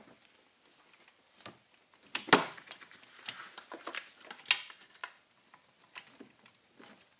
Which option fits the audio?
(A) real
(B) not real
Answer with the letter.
A